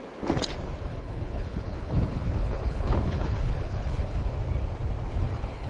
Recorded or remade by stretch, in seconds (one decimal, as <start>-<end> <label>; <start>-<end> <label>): 0.0-0.9 recorded; 0.9-4.3 remade; 4.3-5.1 recorded; 5.1-5.7 remade